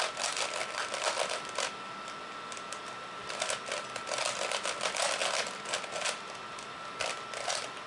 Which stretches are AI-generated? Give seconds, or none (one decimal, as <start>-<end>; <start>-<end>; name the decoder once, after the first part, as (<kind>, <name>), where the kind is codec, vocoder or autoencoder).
none